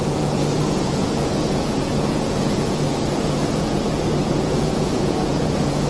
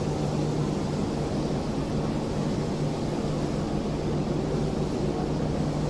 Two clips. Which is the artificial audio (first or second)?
first